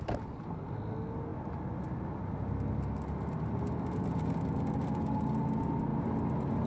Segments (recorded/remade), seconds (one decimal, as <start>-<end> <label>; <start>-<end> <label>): 0.0-6.7 recorded